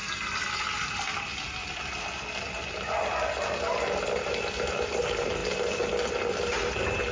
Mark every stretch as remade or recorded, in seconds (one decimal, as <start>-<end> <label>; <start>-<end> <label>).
0.0-7.1 recorded